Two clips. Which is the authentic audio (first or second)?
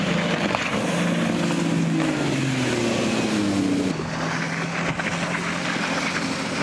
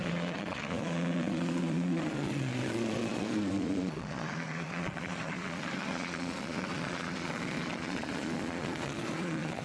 first